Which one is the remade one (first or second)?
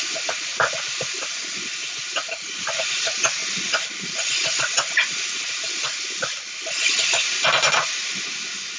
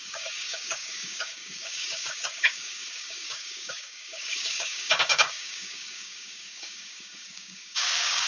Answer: second